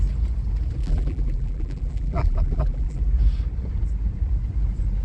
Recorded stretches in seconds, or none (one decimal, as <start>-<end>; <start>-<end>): 0.0-0.8; 3.0-5.0